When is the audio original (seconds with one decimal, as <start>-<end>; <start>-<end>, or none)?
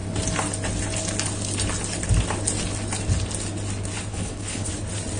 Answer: 0.0-4.1; 4.7-5.2